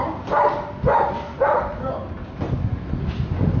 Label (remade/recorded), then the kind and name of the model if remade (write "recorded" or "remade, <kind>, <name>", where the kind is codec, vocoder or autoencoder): recorded